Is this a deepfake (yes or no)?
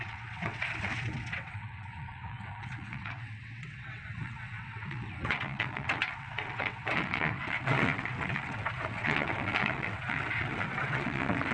yes